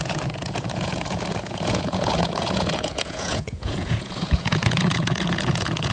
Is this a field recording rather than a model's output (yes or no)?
no